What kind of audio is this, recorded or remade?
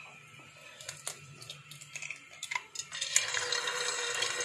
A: recorded